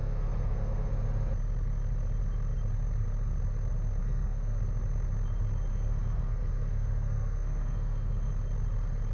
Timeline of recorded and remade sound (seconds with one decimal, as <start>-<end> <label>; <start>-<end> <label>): 0.0-0.9 remade; 0.9-4.0 recorded; 4.0-4.6 remade; 4.6-5.7 recorded; 5.7-8.3 remade; 8.3-9.1 recorded